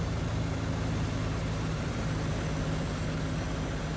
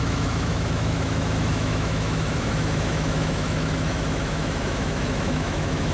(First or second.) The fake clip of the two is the second